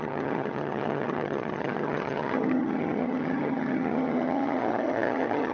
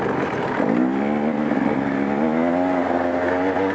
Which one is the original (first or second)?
second